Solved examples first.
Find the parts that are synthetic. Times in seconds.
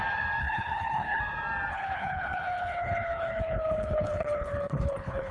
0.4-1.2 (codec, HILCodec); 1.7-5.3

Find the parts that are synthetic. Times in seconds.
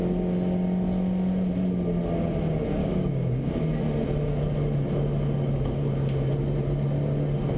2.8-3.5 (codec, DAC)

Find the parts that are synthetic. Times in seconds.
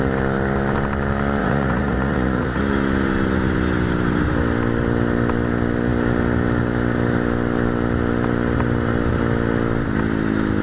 1.4-2.6 (vocoder, Vocos)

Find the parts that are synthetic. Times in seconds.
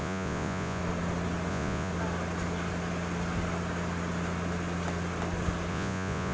0.0-0.8 (vocoder, Vocos); 1.5-1.9; 5.7-6.3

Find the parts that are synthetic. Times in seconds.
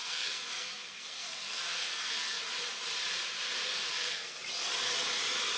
0.0-2.4 (codec, SNAC); 3.7-4.4